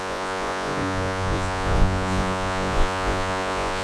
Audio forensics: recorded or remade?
remade